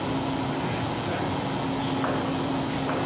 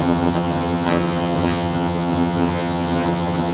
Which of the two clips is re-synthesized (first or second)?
second